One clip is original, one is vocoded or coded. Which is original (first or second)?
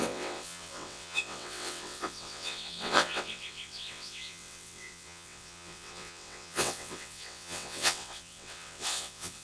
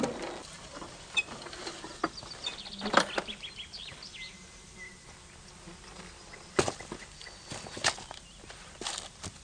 second